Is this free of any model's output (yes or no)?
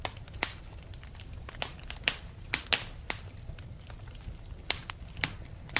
yes